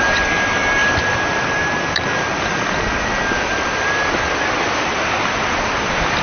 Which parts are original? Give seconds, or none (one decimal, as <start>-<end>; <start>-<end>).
0.0-6.2